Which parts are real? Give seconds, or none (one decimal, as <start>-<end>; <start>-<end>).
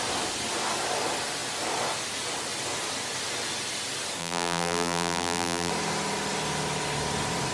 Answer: 0.0-4.2; 5.7-7.5